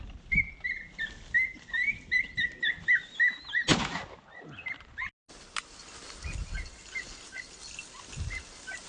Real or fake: real